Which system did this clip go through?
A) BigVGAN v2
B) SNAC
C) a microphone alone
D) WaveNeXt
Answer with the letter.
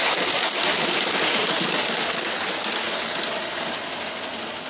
C